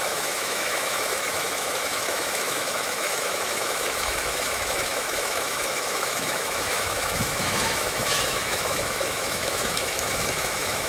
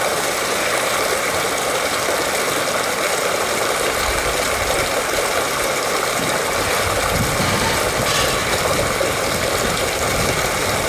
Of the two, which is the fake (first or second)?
first